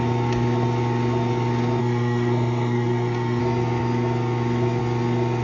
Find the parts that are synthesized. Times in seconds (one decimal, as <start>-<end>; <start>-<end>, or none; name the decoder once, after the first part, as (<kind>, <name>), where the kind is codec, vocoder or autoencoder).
1.8-3.4 (codec, SNAC)